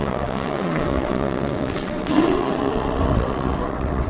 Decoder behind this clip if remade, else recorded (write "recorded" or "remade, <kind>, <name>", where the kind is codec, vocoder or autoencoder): remade, vocoder, WaveNeXt